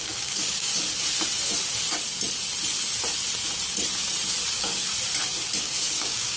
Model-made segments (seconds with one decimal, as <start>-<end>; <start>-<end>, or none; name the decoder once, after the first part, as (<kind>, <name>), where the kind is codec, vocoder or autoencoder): 0.0-0.7 (codec, DAC); 4.5-4.9; 5.6-6.4